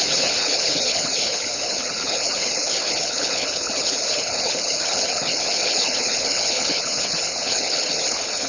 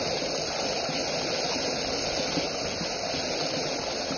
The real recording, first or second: second